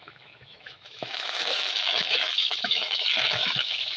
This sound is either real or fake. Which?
fake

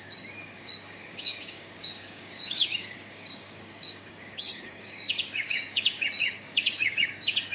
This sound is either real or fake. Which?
fake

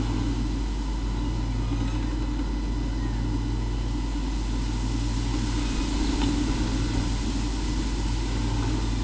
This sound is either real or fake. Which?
real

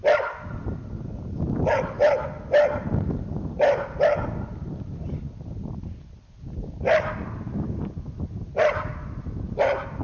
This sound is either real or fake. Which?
real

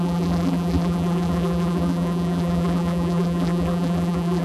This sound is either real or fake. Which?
fake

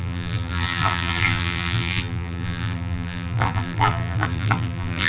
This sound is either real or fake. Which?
fake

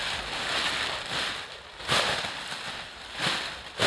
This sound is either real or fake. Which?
real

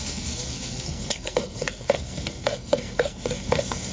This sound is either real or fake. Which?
fake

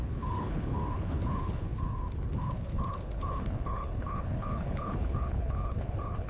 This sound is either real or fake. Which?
fake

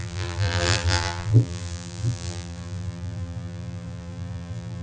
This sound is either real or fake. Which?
fake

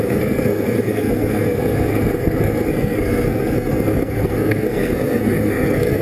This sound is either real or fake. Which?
fake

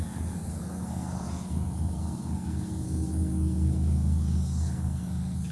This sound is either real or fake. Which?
fake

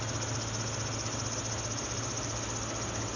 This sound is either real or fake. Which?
real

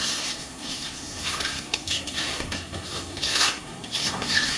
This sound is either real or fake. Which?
fake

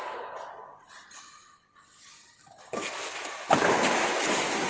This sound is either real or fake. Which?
real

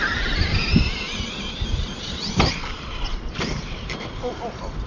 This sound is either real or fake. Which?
fake